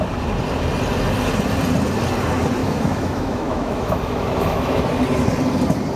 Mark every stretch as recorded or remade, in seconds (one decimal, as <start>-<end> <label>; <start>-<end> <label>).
0.0-2.6 recorded; 2.6-4.8 remade; 4.8-6.0 recorded